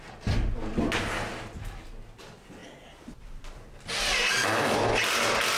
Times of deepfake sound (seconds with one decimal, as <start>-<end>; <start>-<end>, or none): none